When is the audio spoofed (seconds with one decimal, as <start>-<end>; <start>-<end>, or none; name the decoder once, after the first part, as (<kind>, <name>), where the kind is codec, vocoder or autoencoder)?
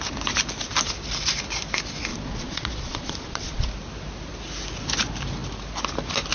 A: 2.1-3.7 (vocoder, Vocos)